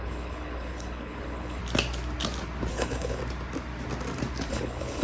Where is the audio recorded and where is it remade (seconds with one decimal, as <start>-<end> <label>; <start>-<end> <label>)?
0.0-1.6 remade; 1.6-2.7 recorded; 2.7-3.2 remade; 3.2-4.5 recorded; 4.5-5.0 remade